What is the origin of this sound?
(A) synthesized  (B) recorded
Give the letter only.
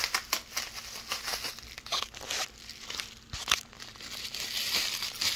B